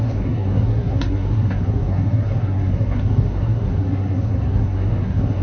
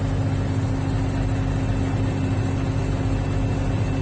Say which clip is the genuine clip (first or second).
second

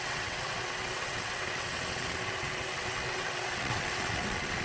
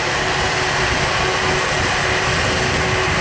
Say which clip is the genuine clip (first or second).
second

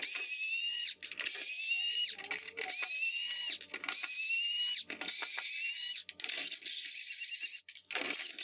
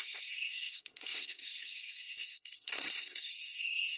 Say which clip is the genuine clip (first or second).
first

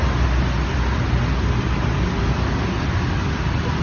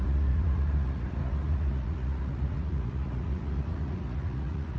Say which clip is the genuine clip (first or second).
first